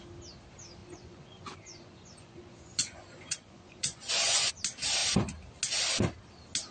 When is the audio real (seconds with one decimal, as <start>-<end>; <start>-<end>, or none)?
0.0-0.8; 4.5-6.7